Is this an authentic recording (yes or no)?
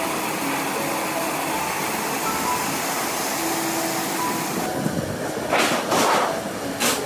yes